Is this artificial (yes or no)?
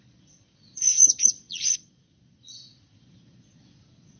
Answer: yes